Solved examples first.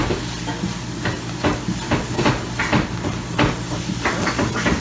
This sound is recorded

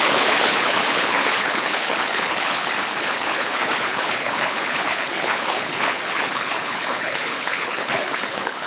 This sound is remade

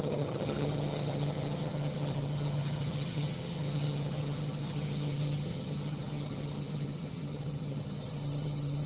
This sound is remade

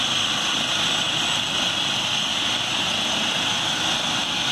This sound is recorded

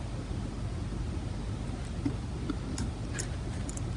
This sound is recorded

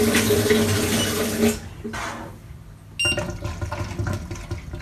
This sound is recorded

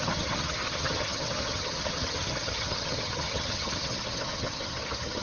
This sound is remade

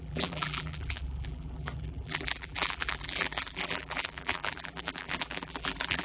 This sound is remade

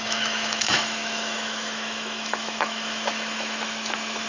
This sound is remade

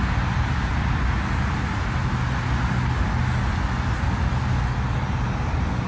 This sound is recorded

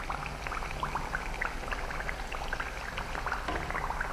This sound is recorded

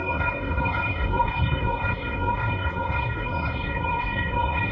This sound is remade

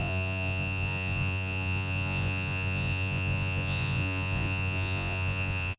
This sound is remade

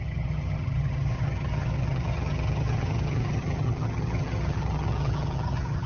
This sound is remade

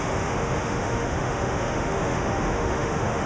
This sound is remade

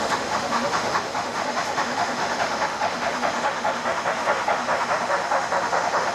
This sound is remade